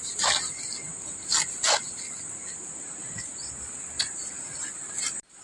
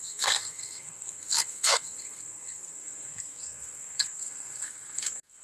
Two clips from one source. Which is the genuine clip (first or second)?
first